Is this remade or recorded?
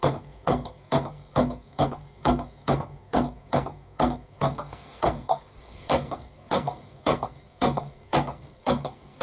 remade